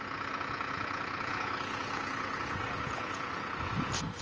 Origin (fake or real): fake